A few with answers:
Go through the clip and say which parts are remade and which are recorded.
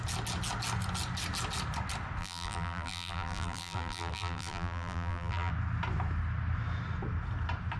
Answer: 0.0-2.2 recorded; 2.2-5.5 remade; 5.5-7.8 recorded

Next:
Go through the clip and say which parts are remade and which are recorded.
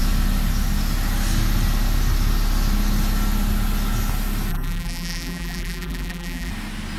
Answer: 0.0-4.5 recorded; 4.5-6.5 remade; 6.5-7.0 recorded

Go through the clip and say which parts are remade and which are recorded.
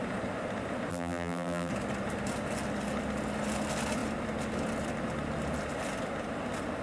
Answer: 0.0-0.9 recorded; 0.9-1.7 remade; 1.7-6.8 recorded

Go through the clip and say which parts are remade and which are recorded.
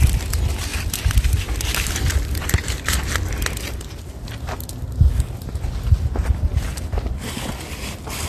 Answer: 0.0-0.7 recorded; 0.7-3.3 remade; 3.3-8.3 recorded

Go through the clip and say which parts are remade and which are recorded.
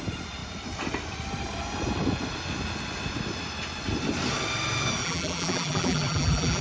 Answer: 0.0-5.0 recorded; 5.0-6.6 remade